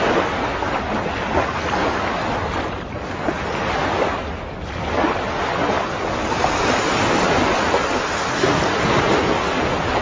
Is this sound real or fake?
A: real